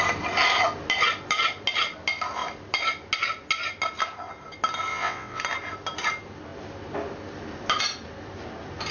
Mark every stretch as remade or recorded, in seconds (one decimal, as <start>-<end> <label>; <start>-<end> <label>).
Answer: 0.0-4.9 recorded; 4.9-5.4 remade; 5.4-8.9 recorded